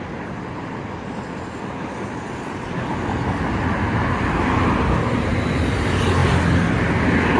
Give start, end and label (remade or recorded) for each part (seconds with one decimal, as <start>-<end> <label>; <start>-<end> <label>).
0.0-7.4 recorded